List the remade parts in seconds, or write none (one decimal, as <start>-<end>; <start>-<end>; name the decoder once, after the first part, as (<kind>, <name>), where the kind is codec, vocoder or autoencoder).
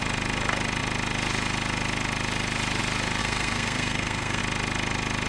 3.2-4.4 (codec, SNAC)